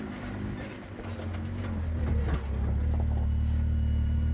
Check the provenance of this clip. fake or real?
real